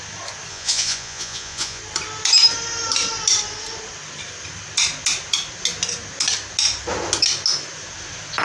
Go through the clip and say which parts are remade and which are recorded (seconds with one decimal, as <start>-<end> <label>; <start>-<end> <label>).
0.0-0.5 recorded; 0.5-1.8 remade; 1.8-8.4 recorded